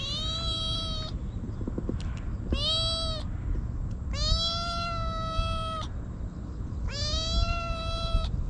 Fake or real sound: real